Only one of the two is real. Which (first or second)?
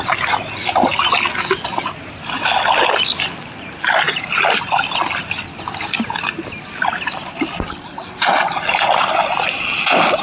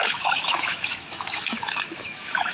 first